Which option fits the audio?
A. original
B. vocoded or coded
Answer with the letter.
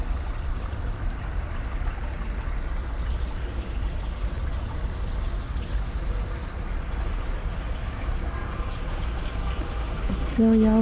A